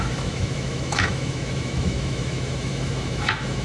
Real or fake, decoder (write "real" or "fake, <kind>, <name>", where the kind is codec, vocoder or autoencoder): fake, autoencoder, DAC-VAE